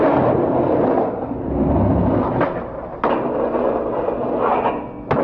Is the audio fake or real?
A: real